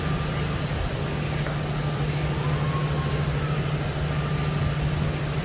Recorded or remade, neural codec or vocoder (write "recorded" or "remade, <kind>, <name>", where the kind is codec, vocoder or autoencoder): recorded